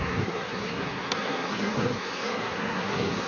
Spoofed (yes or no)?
yes